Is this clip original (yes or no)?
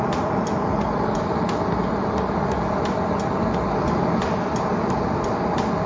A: yes